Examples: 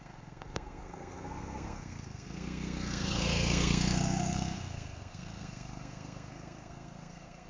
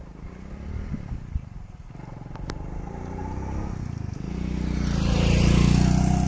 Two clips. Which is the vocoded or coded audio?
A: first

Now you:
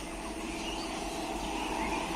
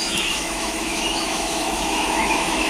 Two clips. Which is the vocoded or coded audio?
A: second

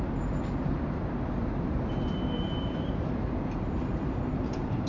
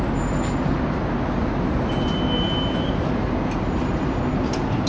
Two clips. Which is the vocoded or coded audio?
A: first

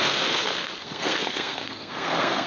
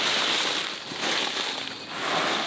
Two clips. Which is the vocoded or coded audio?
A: first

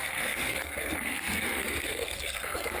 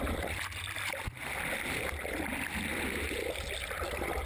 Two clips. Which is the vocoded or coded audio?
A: first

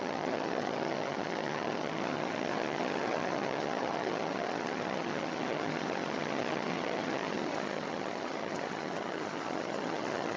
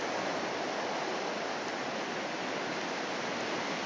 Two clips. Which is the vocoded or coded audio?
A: first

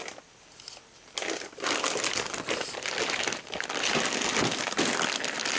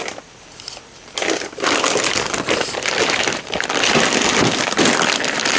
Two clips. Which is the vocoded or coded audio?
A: second